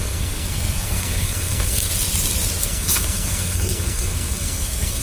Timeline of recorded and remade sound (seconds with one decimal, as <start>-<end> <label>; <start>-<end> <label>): 0.0-1.9 remade; 1.9-2.6 recorded; 2.6-5.0 remade